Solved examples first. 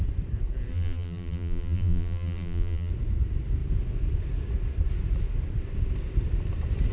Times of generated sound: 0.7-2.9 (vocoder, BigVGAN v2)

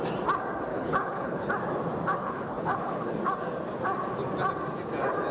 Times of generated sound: 0.7-1.5 (codec, HILCodec); 2.2-3.2

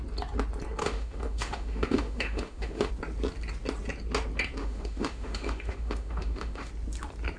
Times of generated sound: 0.8-2.9 (autoencoder, DAC-VAE); 4.6-6.7

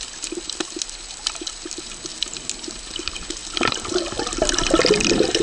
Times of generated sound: none

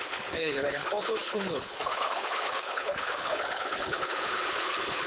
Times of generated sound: 0.0-5.1 (codec, HILCodec)